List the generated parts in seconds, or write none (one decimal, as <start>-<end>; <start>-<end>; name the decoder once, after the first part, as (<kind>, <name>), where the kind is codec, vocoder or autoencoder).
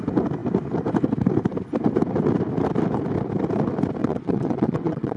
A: 4.0-5.2 (vocoder, WaveNeXt)